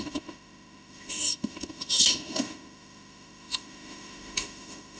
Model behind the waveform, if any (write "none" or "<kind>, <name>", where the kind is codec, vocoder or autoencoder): autoencoder, DAC-VAE